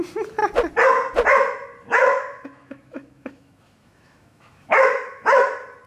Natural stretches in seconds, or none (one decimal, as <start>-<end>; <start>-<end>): 0.0-2.0; 5.5-5.9